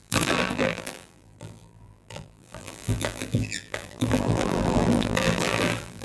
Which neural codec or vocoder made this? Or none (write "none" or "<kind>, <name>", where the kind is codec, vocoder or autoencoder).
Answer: vocoder, BigVGAN v2